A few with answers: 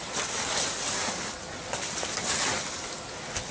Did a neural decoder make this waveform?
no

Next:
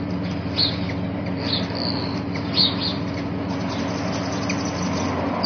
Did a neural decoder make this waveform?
no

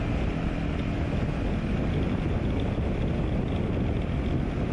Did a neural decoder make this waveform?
no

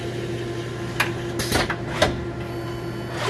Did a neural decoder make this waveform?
no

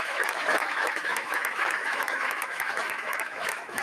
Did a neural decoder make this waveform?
yes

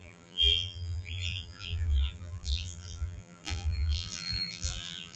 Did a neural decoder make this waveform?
yes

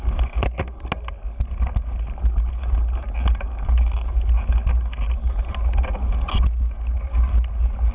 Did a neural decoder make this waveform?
no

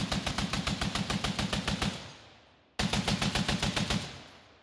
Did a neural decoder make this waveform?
no